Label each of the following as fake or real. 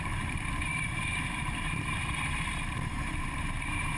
fake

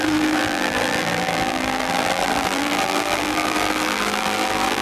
fake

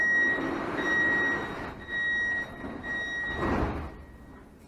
real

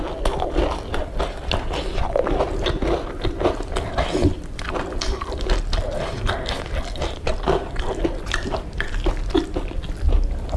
real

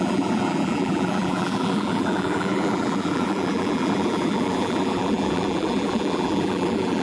fake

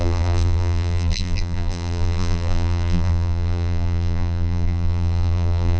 fake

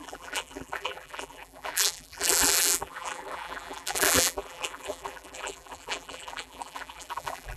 fake